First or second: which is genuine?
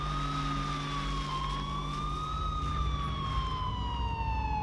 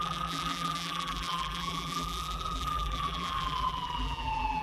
first